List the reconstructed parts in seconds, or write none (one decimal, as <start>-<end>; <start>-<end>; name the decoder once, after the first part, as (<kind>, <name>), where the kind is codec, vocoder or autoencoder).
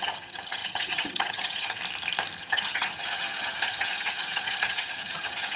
0.0-1.8 (vocoder, HiFi-GAN); 2.4-5.6